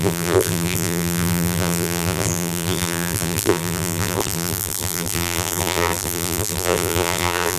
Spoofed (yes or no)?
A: yes